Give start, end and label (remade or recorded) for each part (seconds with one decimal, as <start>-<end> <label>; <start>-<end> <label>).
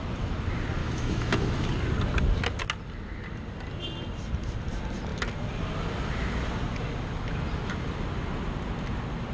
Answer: 0.0-0.8 recorded; 0.8-1.7 remade; 1.7-9.3 recorded